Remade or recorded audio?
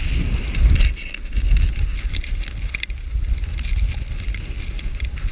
recorded